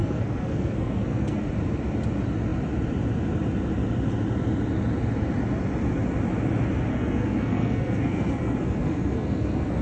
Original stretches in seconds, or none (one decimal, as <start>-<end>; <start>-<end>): 1.4-6.9